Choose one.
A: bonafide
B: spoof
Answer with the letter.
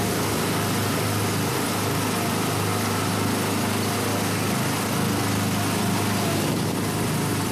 A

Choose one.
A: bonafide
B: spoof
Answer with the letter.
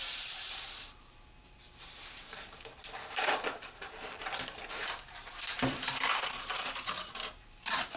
B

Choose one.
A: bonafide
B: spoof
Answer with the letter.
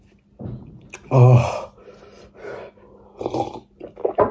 A